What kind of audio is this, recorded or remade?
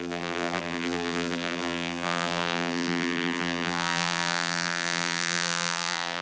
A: remade